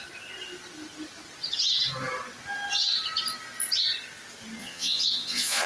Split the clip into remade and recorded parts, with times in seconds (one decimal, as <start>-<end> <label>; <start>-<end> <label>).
0.0-4.6 recorded; 4.6-5.7 remade